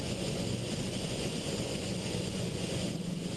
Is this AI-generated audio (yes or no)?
yes